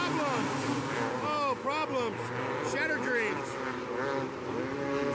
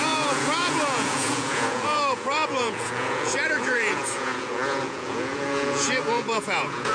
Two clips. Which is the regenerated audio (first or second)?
second